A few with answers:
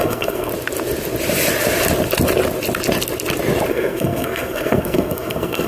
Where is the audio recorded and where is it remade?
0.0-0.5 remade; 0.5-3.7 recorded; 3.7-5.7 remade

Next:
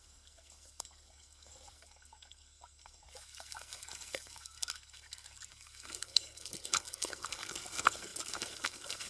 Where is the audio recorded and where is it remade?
0.0-9.1 remade

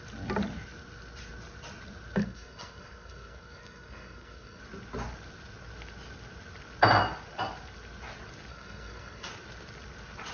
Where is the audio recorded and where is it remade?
0.0-2.2 recorded; 2.2-4.6 remade; 4.6-8.5 recorded; 8.5-9.3 remade; 9.3-10.3 recorded

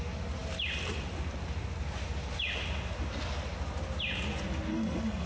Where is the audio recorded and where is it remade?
0.0-4.7 recorded; 4.7-5.3 remade

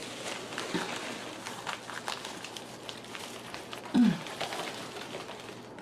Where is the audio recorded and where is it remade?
0.0-5.8 recorded

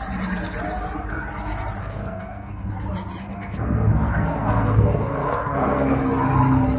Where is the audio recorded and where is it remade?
0.0-1.8 recorded; 1.8-2.7 remade; 2.7-3.2 recorded; 3.2-6.0 remade; 6.0-6.8 recorded

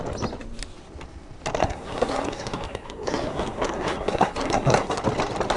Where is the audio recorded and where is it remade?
0.0-1.6 recorded; 1.6-5.0 remade; 5.0-5.6 recorded

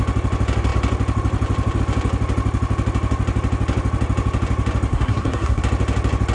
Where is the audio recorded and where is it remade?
0.0-4.9 recorded; 4.9-5.6 remade; 5.6-6.3 recorded